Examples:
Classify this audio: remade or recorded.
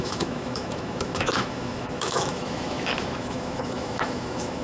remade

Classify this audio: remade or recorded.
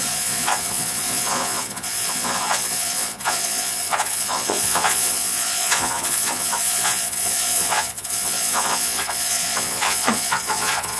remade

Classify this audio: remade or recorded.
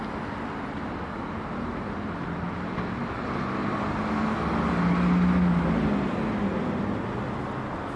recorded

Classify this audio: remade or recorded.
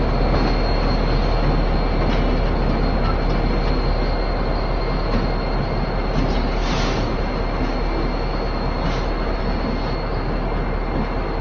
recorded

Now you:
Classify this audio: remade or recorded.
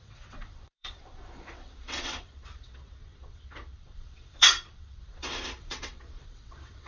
remade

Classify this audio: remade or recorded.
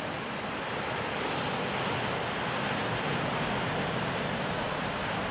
recorded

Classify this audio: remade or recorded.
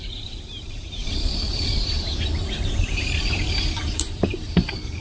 remade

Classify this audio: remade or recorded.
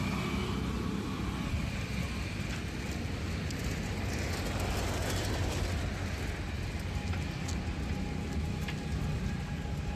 recorded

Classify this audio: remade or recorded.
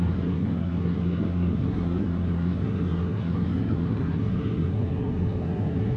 remade